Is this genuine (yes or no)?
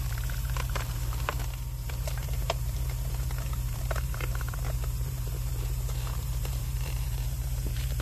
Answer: no